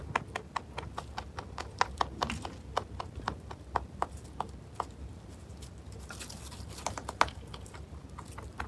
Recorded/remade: recorded